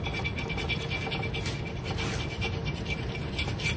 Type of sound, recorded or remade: recorded